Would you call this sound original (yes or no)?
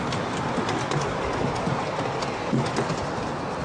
yes